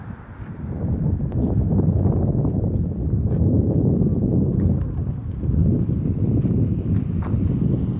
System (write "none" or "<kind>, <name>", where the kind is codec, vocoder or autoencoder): none